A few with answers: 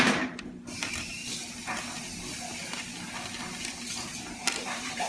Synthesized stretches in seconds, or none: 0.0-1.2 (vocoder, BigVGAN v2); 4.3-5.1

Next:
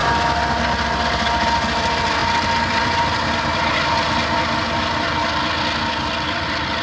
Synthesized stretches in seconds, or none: 1.0-6.8 (vocoder, BigVGAN v2)

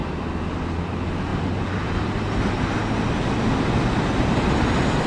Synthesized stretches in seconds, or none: none

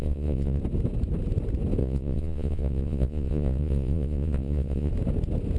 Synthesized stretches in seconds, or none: 0.0-0.6 (vocoder, Vocos); 1.8-4.9